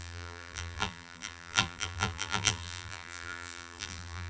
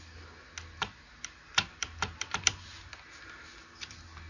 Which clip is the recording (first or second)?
second